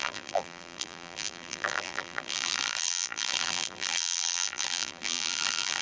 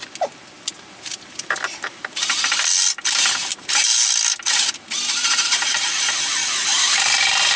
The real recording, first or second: second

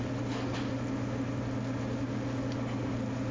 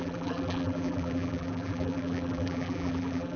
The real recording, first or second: first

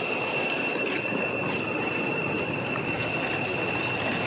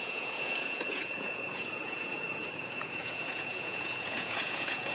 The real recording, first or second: first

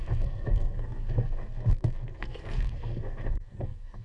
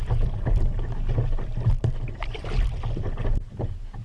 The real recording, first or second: second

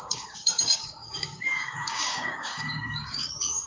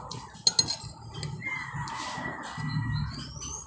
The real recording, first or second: second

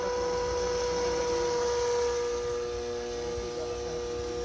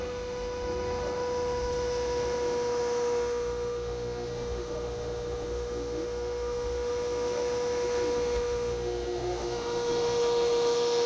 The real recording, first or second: first